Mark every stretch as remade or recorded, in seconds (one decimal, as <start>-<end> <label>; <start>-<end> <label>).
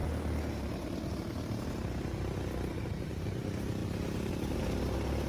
0.0-5.3 recorded